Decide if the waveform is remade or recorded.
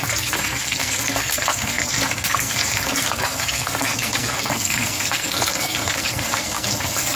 remade